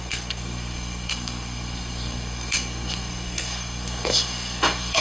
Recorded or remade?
remade